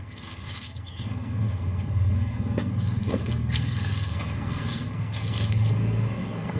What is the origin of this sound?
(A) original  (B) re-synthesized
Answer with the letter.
B